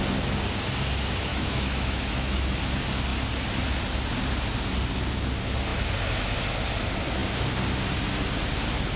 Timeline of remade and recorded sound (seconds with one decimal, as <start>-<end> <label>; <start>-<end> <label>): 0.0-1.3 recorded; 1.3-2.6 remade; 2.6-9.0 recorded